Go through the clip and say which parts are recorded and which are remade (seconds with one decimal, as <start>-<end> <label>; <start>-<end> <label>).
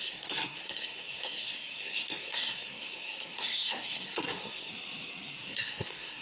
0.0-4.7 remade; 4.7-5.4 recorded; 5.4-6.2 remade